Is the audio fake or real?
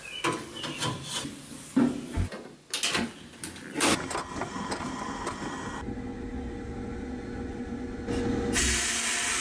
real